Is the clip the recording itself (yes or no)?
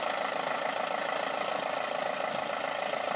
yes